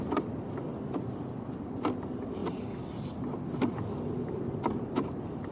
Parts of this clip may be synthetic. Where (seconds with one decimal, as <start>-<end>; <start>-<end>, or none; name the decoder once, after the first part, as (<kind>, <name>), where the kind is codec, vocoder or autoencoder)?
0.0-0.7 (vocoder, BigVGAN v2); 1.3-2.4; 5.1-5.5